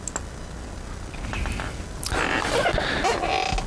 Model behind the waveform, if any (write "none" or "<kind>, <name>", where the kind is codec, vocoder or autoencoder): none